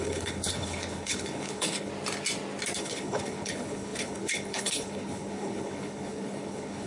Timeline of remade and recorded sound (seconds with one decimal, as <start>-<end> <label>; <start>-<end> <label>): 0.0-1.9 remade; 1.9-2.8 recorded; 2.8-6.9 remade